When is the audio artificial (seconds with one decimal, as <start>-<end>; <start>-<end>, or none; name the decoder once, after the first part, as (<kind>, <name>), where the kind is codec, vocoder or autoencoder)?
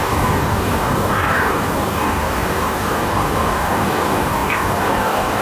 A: 0.0-5.4 (codec, DAC)